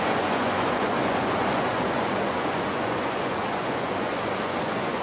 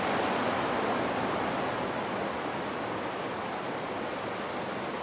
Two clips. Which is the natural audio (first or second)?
second